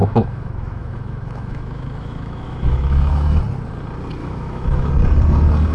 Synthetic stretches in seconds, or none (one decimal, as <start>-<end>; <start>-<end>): 0.0-3.4; 4.2-4.9

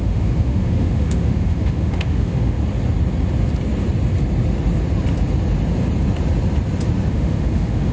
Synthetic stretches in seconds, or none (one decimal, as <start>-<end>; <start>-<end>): 0.0-2.6; 7.1-7.9

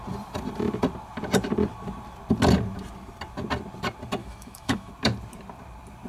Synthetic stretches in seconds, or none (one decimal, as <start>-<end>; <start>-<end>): 4.2-4.9

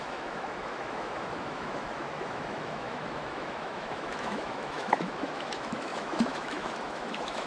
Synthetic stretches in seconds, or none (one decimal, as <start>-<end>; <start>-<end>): 0.0-7.5

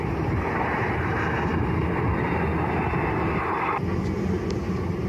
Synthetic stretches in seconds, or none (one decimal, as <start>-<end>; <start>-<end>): none

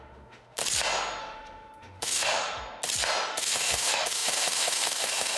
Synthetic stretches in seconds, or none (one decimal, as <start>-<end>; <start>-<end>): 0.0-0.6; 1.2-2.6; 3.3-5.4